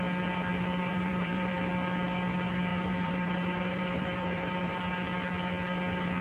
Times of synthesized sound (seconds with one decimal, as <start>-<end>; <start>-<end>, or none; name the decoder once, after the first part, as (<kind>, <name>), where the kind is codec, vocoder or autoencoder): 0.9-1.6 (vocoder, BigVGAN v2); 2.7-4.7